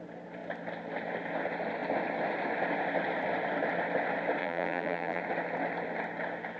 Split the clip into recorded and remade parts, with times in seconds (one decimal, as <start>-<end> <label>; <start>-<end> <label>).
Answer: 0.0-4.4 recorded; 4.4-5.2 remade; 5.2-6.6 recorded